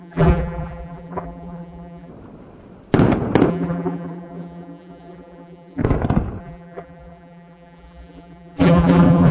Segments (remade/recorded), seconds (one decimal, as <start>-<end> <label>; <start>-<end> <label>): 0.0-2.1 remade; 2.1-3.5 recorded; 3.5-5.8 remade; 5.8-6.4 recorded; 6.4-9.3 remade